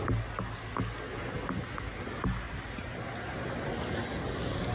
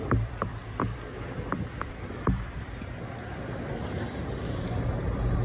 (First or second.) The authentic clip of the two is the first